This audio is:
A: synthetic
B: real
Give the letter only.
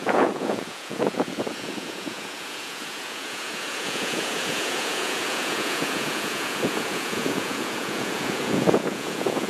A